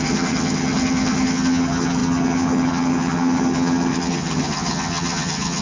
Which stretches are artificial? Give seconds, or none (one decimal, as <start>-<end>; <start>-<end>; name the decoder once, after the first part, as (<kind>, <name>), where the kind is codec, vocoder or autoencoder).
0.0-5.6 (vocoder, HiFi-GAN)